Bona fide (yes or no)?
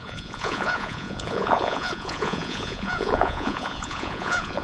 no